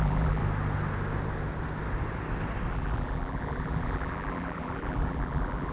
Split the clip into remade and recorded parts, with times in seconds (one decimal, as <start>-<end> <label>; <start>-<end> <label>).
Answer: 0.0-0.4 remade; 0.4-2.7 recorded; 2.7-5.7 remade